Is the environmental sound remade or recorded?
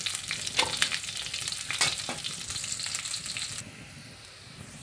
recorded